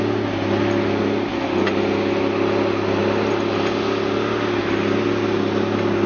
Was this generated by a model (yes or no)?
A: no